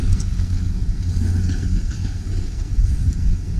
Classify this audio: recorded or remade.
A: remade